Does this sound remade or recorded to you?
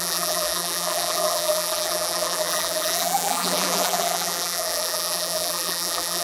remade